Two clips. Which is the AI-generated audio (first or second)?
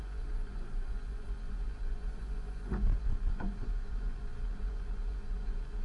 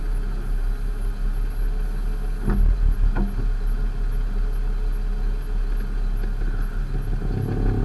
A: first